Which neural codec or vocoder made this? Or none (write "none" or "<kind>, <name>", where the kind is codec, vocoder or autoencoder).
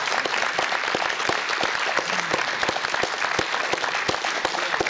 none